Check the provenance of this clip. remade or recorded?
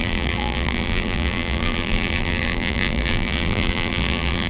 remade